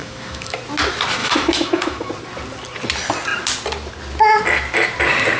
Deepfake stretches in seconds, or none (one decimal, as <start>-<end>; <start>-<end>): 0.0-0.6; 1.2-2.1